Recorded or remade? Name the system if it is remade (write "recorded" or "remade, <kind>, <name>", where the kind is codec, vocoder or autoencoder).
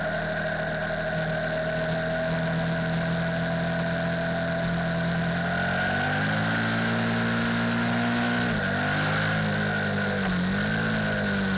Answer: recorded